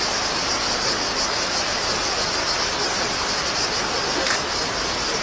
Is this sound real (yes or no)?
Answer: yes